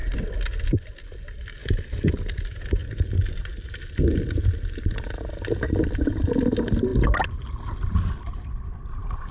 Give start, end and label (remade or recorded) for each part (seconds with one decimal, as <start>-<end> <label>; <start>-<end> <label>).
0.0-1.6 recorded; 1.6-2.1 remade; 2.1-9.3 recorded